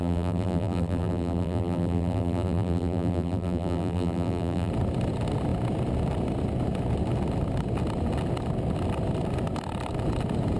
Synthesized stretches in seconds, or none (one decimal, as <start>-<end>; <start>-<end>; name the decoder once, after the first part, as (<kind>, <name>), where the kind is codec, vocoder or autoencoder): 0.0-4.7 (vocoder, BigVGAN v2)